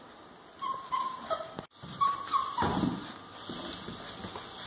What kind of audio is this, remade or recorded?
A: recorded